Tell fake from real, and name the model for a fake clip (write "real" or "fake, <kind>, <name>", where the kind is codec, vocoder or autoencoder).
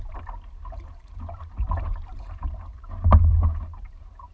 fake, vocoder, BigVGAN v2